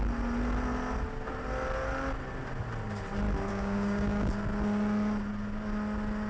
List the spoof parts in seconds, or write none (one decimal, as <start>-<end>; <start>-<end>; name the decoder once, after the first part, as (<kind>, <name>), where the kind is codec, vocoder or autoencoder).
3.5-4.3 (codec, DAC)